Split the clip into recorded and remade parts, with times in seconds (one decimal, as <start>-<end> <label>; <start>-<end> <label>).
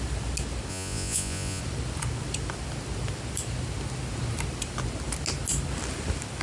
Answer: 0.0-0.7 recorded; 0.7-1.6 remade; 1.6-6.4 recorded